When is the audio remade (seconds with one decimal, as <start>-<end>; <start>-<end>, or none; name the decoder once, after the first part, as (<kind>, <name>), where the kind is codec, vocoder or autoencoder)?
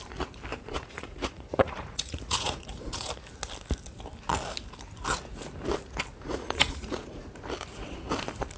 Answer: 0.5-3.1 (vocoder, Vocos); 6.1-7.3